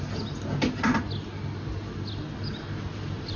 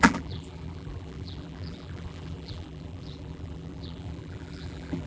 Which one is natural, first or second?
first